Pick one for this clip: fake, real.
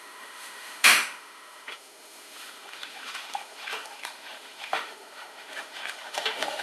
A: fake